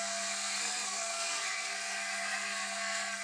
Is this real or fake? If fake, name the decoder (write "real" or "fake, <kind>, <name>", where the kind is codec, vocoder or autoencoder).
fake, codec, SNAC